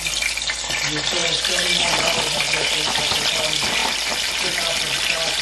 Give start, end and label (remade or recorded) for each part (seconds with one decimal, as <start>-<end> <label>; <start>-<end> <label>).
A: 0.0-1.2 recorded; 1.2-3.3 remade; 3.3-3.8 recorded; 3.8-5.4 remade